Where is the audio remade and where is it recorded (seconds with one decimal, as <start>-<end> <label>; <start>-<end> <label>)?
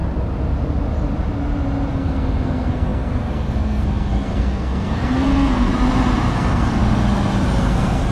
0.0-1.9 recorded; 1.9-5.7 remade; 5.7-6.3 recorded; 6.3-6.8 remade; 6.8-7.6 recorded; 7.6-8.1 remade